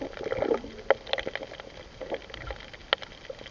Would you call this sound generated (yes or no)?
no